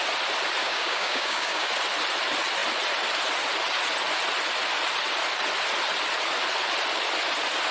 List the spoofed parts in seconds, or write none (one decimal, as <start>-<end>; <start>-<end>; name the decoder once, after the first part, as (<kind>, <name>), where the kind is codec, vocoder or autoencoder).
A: 0.6-1.7 (codec, DAC)